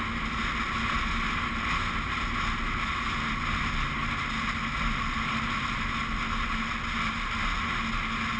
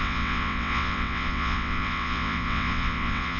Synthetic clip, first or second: second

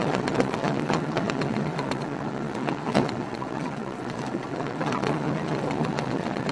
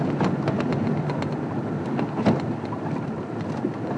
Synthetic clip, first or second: first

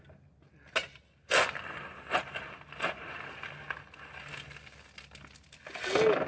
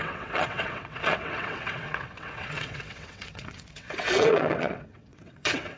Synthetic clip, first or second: second